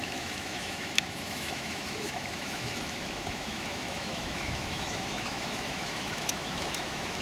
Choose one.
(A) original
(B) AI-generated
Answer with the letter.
B